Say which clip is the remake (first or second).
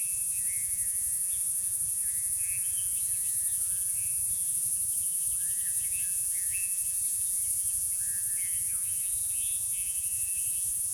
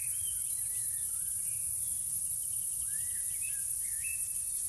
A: first